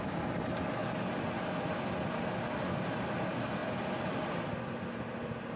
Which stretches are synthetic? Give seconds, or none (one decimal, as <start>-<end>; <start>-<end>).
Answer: none